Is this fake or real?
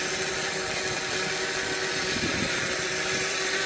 fake